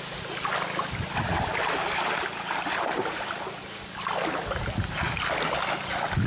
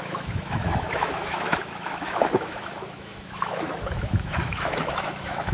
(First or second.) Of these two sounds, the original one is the first